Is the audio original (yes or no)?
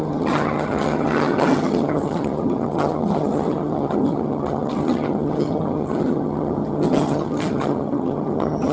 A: no